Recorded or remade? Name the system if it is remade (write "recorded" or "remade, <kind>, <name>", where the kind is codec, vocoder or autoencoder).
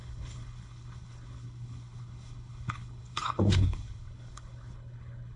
remade, codec, HILCodec